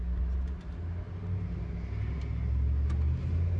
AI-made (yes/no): no